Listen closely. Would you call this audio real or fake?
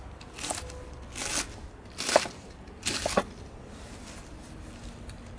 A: real